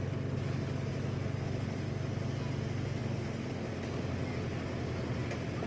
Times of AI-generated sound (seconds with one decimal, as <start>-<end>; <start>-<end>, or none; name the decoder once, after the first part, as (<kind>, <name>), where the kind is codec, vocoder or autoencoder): none